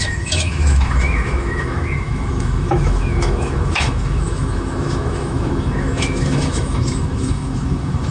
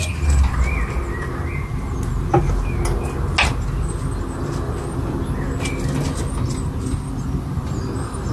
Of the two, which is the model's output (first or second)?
first